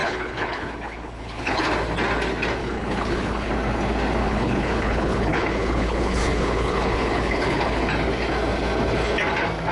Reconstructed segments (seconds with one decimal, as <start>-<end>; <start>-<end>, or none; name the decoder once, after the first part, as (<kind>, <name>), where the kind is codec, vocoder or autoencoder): 0.0-1.6 (codec, HILCodec); 2.6-3.5; 4.2-7.8